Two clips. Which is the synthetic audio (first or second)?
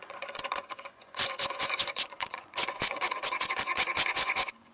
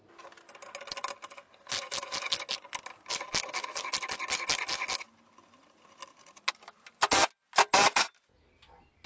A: first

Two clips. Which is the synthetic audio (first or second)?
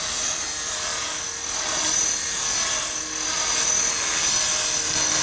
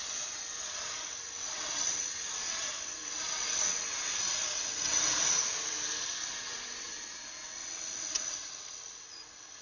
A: second